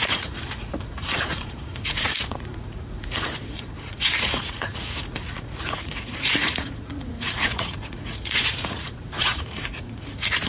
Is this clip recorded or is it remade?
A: remade